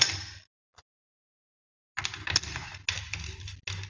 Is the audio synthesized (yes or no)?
no